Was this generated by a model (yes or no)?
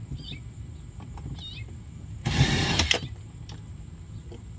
yes